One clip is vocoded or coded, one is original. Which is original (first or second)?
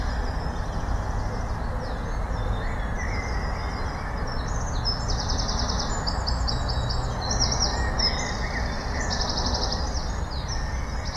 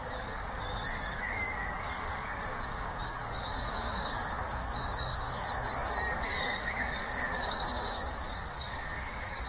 first